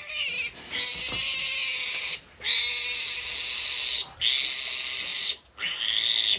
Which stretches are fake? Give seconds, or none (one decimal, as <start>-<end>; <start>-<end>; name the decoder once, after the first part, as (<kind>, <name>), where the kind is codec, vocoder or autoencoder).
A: 5.1-5.8 (vocoder, BigVGAN v2)